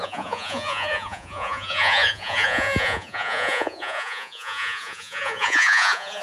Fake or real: fake